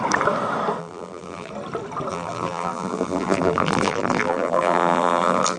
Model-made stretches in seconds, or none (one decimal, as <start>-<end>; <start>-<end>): 0.8-1.5; 2.1-5.6